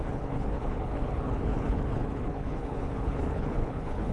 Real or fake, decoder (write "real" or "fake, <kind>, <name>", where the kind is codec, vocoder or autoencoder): fake, codec, HILCodec